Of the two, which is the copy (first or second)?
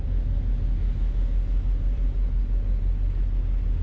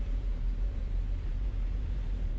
second